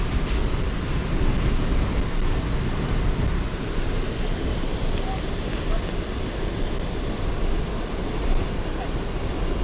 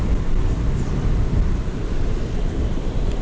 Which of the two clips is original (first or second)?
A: first